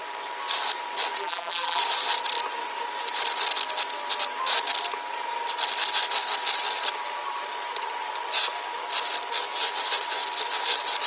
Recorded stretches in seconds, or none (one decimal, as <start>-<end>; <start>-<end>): 0.0-1.2; 1.8-11.1